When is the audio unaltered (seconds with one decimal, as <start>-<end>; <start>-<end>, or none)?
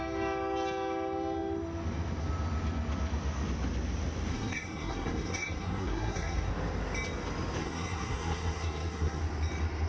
0.0-4.3; 6.5-7.6; 9.2-9.9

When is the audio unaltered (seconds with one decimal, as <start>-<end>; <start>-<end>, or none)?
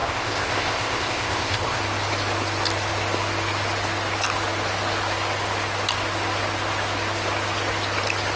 1.8-8.4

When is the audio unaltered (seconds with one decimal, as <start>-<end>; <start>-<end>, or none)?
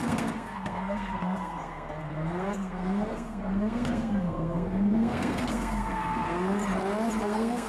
6.6-7.2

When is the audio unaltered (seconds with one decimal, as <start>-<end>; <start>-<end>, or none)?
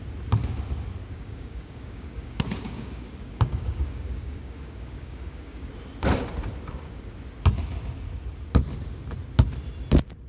0.0-1.0; 5.7-10.3